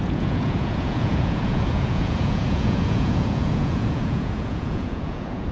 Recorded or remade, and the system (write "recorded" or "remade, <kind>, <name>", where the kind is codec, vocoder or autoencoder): remade, vocoder, Vocos